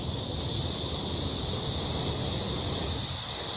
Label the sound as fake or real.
real